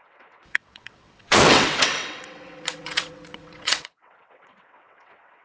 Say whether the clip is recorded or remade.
remade